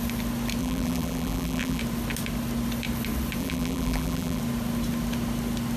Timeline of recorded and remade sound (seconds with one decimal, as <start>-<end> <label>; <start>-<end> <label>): 0.0-0.6 recorded; 0.6-1.8 remade; 1.8-3.4 recorded; 3.4-4.4 remade; 4.4-5.8 recorded